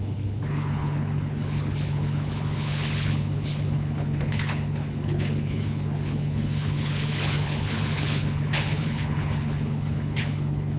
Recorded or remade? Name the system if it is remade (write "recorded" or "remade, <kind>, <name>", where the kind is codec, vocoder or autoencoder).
remade, codec, HILCodec